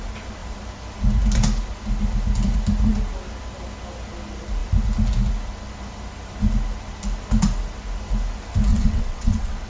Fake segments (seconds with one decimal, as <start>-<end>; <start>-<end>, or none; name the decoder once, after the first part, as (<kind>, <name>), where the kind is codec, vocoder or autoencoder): 8.7-9.7 (vocoder, WaveNeXt)